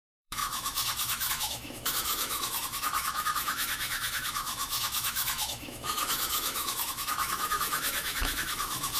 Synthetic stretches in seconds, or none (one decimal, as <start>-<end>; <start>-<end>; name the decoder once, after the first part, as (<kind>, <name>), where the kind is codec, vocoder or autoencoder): 0.0-9.0 (autoencoder, DAC-VAE)